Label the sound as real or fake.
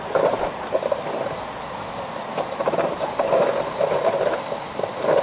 fake